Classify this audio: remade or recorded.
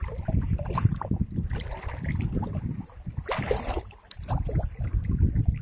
recorded